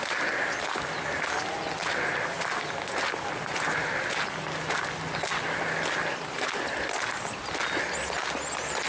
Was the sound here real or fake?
real